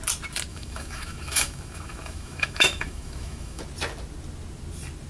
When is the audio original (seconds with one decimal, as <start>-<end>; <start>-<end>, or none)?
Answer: 0.0-0.5; 3.6-5.1